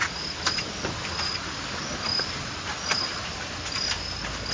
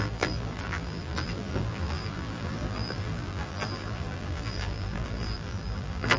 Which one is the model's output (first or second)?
second